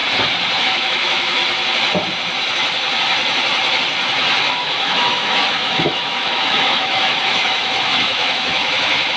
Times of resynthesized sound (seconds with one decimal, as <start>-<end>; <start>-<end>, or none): 0.6-1.4; 4.5-9.2